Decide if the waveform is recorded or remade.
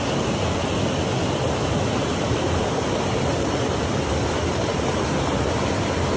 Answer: recorded